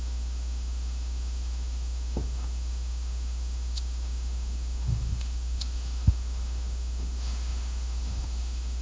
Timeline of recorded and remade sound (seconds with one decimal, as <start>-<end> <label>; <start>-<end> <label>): 0.0-8.8 remade